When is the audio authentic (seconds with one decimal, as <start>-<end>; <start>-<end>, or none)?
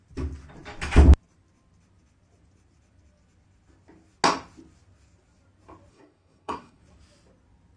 0.0-5.9; 6.8-7.8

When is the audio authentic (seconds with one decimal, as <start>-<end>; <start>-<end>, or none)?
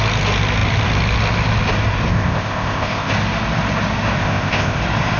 0.0-2.1; 3.1-4.2; 4.8-5.2